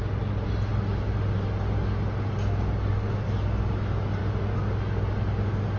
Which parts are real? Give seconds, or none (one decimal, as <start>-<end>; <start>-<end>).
0.0-5.8